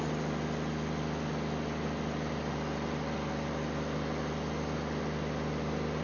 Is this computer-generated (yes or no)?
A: no